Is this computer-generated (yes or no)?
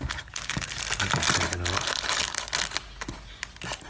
no